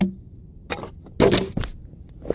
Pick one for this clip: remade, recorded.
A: recorded